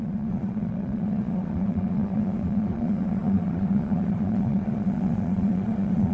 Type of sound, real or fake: fake